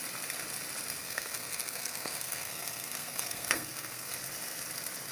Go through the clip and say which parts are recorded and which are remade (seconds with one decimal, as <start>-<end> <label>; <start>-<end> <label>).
0.0-1.0 recorded; 1.0-4.1 remade; 4.1-5.1 recorded

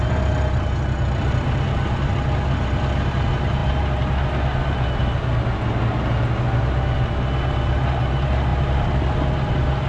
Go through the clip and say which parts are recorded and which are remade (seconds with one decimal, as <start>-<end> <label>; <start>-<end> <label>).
0.0-9.9 recorded

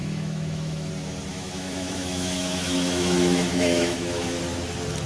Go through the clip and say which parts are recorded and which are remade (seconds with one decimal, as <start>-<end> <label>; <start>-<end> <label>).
0.0-0.9 remade; 0.9-1.3 recorded; 1.3-4.4 remade; 4.4-5.1 recorded

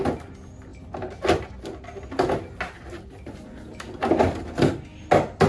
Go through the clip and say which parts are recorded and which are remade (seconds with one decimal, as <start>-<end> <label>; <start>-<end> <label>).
0.0-5.5 recorded

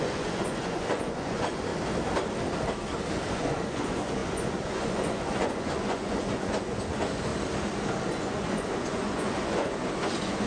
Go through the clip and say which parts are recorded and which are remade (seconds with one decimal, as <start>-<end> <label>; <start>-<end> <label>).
0.0-1.7 remade; 1.7-3.3 recorded; 3.3-7.3 remade; 7.3-8.1 recorded; 8.1-10.5 remade

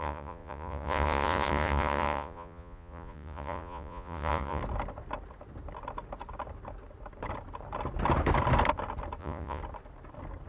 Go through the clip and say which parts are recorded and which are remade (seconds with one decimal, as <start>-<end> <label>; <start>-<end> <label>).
0.0-4.6 remade; 4.6-9.2 recorded; 9.2-9.6 remade; 9.6-10.5 recorded

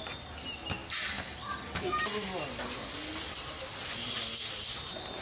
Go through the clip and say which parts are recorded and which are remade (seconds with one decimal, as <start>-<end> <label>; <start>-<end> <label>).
0.0-5.2 recorded

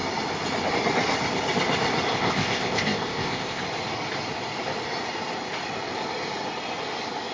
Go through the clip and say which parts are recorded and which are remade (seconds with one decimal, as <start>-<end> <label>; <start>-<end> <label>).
0.0-2.1 recorded; 2.1-3.6 remade; 3.6-7.3 recorded